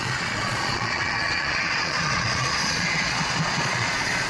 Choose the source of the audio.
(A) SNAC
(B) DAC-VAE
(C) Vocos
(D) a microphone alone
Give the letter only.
C